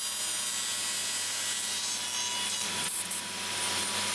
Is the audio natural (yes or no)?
yes